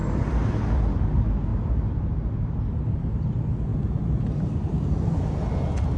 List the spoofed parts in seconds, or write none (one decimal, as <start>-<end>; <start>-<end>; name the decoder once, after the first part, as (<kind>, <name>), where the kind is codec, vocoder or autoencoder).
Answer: 1.5-2.6 (vocoder, BigVGAN v2); 3.7-4.9